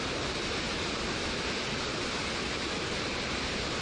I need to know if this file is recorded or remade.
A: remade